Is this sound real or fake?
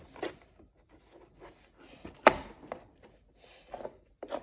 real